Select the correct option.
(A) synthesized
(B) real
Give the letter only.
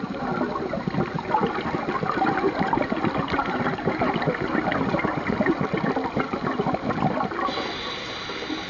B